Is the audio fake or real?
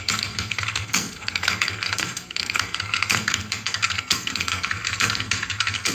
fake